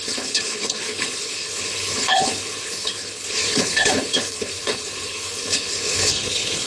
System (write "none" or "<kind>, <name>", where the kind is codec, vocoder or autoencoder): codec, HILCodec